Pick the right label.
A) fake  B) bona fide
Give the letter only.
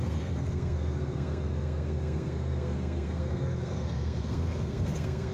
A